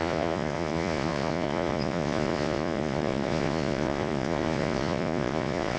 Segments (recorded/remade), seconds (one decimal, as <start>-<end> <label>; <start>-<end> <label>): 0.0-5.8 remade